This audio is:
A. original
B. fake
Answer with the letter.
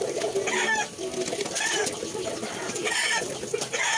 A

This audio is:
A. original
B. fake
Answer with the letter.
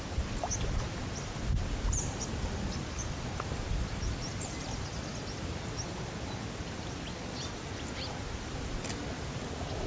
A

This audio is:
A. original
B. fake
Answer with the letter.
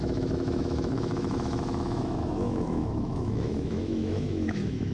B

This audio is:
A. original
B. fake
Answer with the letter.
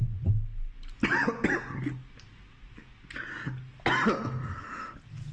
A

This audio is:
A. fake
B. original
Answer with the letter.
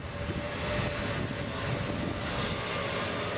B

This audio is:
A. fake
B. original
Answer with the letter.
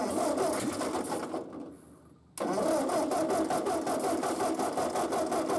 B